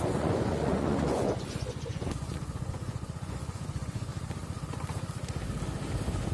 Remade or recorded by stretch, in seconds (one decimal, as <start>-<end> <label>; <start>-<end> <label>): 0.0-4.1 remade; 4.1-6.3 recorded